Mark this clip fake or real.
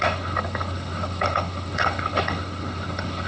fake